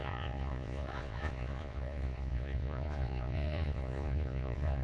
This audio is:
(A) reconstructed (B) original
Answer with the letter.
A